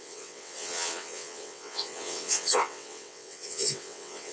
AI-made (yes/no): yes